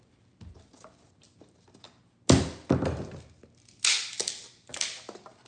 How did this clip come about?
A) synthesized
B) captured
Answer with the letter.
B